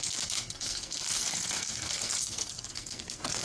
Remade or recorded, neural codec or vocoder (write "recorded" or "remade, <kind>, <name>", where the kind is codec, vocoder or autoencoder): remade, codec, SNAC